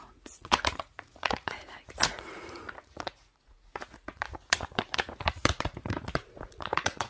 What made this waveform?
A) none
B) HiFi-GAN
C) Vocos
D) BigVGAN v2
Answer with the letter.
C